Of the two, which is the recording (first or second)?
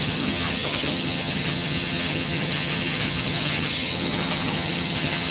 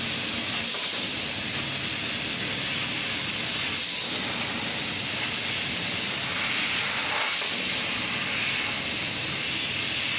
second